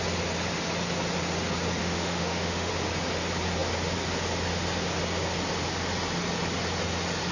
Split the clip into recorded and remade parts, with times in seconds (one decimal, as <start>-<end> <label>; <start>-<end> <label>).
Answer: 0.0-1.8 recorded; 1.8-2.7 remade; 2.7-7.3 recorded